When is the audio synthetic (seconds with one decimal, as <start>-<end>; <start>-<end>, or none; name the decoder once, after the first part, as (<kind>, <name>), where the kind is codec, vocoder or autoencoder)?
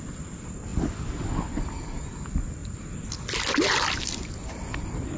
none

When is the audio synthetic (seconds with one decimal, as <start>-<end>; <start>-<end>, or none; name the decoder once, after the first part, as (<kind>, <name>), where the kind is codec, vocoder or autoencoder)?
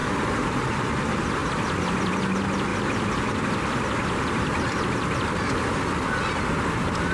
0.0-0.5 (vocoder, BigVGAN v2); 1.4-2.1; 2.7-6.4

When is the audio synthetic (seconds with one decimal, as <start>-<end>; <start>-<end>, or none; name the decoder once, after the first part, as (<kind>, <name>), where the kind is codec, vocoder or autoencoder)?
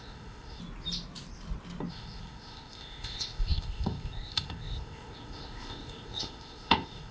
0.0-0.6 (codec, ZipCodec); 1.9-7.1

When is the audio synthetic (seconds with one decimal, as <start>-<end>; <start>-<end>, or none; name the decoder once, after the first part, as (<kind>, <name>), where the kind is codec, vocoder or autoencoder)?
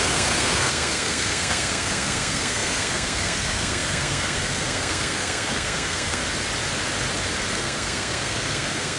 0.0-6.2 (codec, SNAC); 7.5-9.0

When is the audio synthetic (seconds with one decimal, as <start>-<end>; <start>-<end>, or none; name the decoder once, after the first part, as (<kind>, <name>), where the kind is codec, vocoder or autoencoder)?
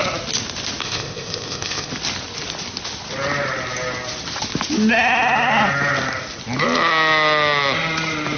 0.8-1.9 (codec, ZipCodec)